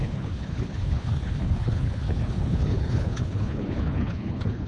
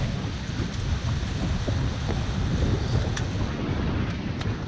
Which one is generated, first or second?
first